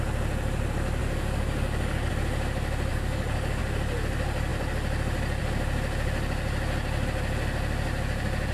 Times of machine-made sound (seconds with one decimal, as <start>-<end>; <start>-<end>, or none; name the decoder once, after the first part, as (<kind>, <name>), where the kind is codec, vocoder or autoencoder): 1.0-2.1 (codec, DAC); 2.9-3.6